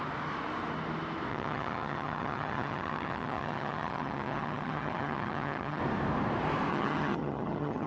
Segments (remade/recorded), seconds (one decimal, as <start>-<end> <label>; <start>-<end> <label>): 0.0-1.3 recorded; 1.3-5.8 remade; 5.8-6.7 recorded; 6.7-7.9 remade